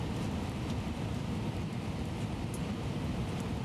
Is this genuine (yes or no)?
yes